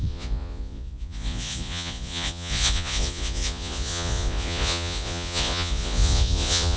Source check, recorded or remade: remade